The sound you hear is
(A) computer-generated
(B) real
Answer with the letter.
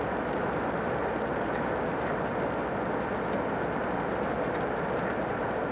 B